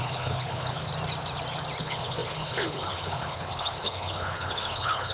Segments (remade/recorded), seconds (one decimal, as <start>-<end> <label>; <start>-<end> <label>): 0.0-0.9 remade; 0.9-1.8 recorded; 1.8-5.1 remade